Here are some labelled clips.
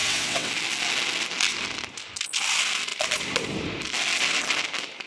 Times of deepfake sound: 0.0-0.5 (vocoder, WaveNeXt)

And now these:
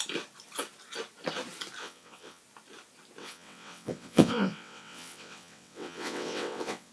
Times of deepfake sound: 1.8-2.4 (vocoder, WaveNeXt); 3.2-6.9